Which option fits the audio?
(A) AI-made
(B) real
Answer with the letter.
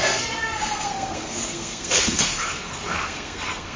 A